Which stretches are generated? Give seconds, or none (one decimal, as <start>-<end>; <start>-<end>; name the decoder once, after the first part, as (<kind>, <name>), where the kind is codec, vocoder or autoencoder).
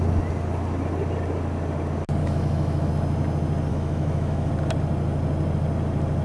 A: 2.2-2.9 (autoencoder, DAC-VAE); 3.7-4.5